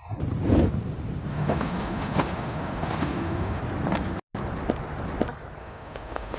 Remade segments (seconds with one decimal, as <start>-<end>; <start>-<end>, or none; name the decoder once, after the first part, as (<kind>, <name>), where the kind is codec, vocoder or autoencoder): 1.3-3.6 (autoencoder, DAC-VAE); 5.6-6.4